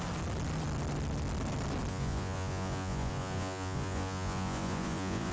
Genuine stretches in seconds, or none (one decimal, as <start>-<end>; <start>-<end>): 0.0-1.9